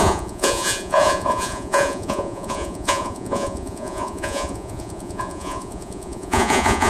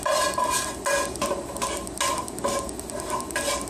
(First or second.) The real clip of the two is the second